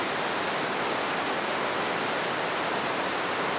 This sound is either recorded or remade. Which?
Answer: recorded